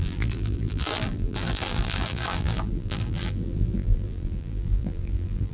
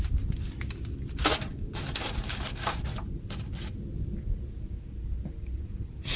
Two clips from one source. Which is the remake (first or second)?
first